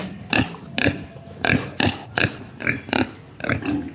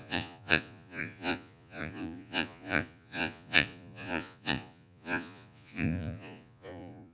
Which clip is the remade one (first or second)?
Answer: second